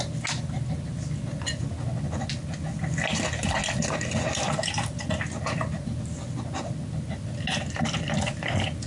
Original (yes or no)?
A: yes